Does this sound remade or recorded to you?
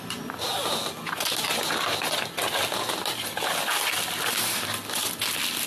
recorded